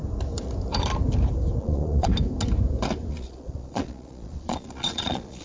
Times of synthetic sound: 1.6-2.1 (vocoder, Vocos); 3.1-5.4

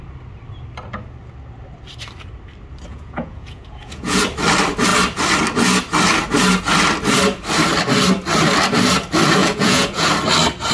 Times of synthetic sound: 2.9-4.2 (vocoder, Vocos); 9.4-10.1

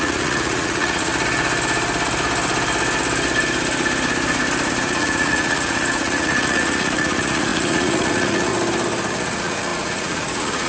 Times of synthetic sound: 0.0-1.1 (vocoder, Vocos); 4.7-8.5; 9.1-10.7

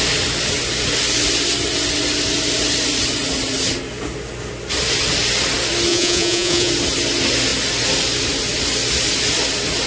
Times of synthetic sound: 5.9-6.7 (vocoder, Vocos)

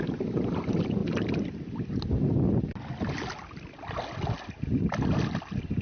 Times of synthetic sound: none